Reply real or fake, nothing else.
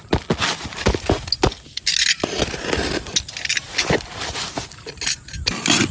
real